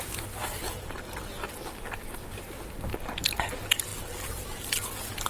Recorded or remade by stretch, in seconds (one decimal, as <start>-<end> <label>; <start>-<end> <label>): 0.0-0.4 recorded; 0.4-1.3 remade; 1.3-3.9 recorded; 3.9-4.7 remade; 4.7-5.3 recorded